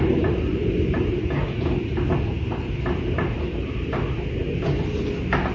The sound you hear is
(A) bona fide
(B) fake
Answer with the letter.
A